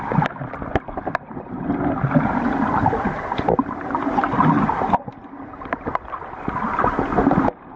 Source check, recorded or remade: recorded